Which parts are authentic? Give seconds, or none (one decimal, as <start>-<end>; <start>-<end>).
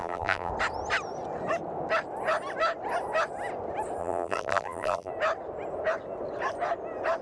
0.5-4.0; 5.1-7.2